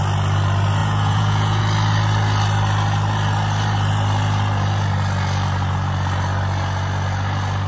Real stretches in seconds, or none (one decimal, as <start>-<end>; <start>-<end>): 0.0-0.8; 1.6-7.7